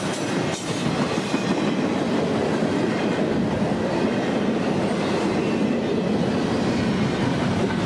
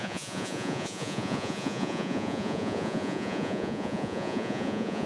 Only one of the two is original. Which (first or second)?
first